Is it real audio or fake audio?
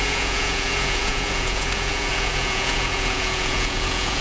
fake